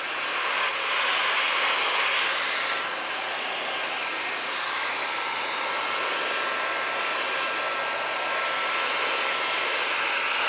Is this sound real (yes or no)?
yes